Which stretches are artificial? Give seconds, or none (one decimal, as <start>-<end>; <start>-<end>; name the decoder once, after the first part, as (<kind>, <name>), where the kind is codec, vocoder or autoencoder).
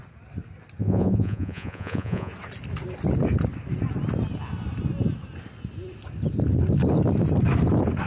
0.8-2.3 (vocoder, Vocos)